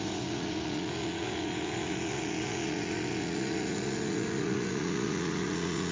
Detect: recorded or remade remade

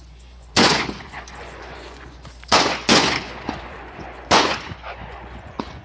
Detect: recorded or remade remade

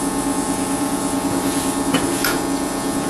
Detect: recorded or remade remade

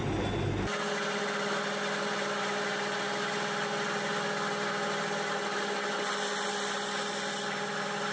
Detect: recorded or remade recorded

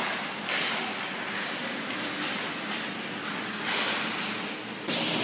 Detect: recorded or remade recorded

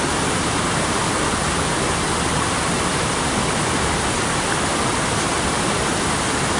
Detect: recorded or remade recorded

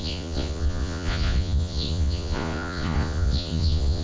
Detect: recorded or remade remade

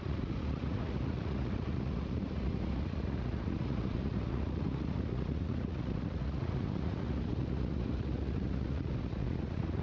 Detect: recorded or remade remade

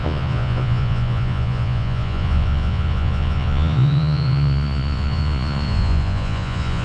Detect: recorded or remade remade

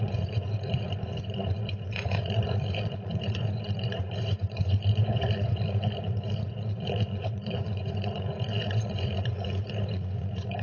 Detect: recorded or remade remade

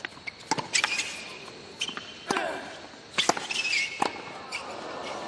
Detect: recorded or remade recorded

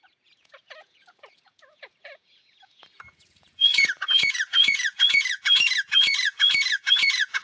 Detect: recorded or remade remade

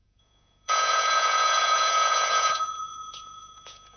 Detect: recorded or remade remade